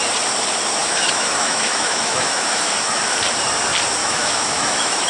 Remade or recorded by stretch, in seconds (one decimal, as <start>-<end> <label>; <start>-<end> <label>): 0.0-0.8 recorded; 0.8-2.7 remade; 2.7-4.0 recorded; 4.0-5.1 remade